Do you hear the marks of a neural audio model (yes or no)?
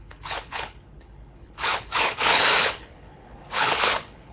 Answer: yes